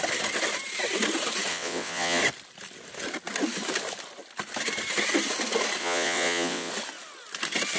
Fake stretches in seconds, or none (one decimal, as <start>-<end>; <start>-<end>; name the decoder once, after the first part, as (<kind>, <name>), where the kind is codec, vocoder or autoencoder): 1.5-2.2 (vocoder, WaveNeXt); 5.8-6.7